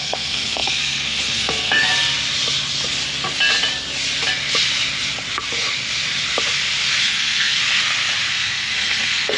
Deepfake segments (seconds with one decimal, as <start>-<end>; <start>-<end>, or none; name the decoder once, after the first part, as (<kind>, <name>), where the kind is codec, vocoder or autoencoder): 0.0-1.9 (codec, SNAC); 7.0-7.6; 8.3-9.4

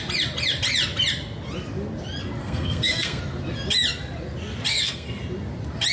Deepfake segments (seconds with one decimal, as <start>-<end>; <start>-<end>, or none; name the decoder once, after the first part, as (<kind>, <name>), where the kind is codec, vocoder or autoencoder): 2.4-3.2 (codec, SNAC); 4.7-5.2